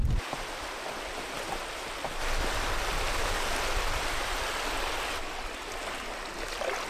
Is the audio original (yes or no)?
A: yes